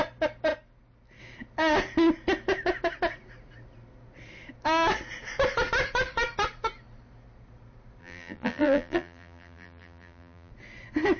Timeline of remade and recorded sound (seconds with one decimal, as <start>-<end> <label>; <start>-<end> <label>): 0.0-8.0 recorded; 8.0-10.5 remade; 10.5-11.2 recorded